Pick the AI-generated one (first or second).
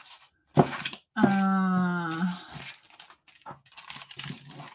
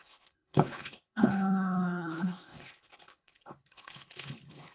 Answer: second